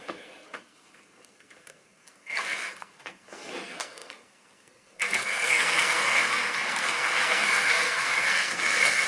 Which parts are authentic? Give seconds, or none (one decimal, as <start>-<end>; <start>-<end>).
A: none